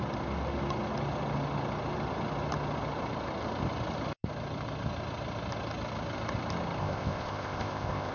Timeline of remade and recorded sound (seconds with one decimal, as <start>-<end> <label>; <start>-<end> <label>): 0.0-6.8 recorded; 6.8-8.1 remade